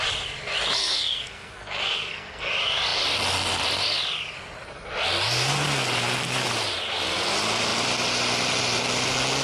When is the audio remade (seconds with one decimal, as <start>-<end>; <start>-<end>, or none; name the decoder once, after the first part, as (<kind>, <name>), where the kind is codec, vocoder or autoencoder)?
0.8-2.5 (codec, SNAC)